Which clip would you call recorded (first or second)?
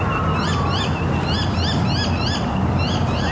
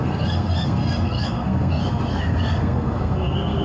first